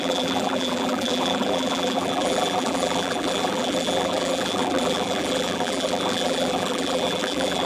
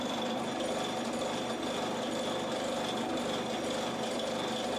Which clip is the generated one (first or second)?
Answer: first